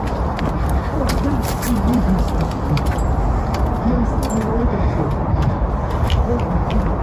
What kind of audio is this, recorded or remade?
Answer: remade